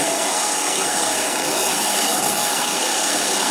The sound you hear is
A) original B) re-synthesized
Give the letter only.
B